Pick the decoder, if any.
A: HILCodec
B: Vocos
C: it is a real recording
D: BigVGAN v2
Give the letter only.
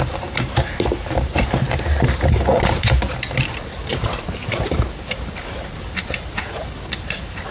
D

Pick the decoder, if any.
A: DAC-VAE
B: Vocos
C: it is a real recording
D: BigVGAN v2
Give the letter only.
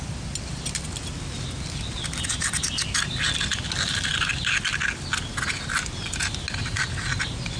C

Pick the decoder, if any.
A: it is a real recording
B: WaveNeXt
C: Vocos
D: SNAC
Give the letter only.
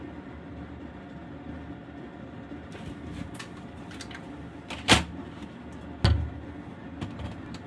A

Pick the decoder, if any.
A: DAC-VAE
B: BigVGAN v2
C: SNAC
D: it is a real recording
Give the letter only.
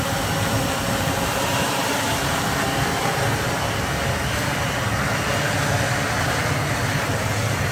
B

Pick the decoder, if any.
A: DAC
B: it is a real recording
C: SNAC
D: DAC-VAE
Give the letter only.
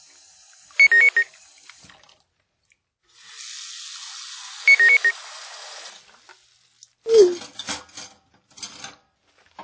B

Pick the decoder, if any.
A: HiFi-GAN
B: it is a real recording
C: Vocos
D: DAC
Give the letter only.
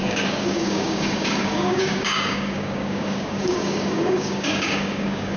D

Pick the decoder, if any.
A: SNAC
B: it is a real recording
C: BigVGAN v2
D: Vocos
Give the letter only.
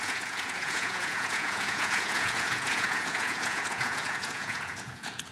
D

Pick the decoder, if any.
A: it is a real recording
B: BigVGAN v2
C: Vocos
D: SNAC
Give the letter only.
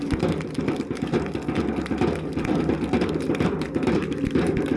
A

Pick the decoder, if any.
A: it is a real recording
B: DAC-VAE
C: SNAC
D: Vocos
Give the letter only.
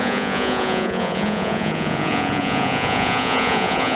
D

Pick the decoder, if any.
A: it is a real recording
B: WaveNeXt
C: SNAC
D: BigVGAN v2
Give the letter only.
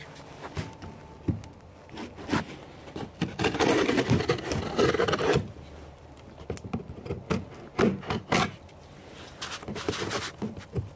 A